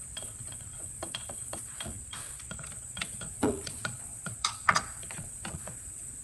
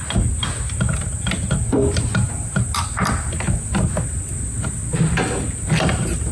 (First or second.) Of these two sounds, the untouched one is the second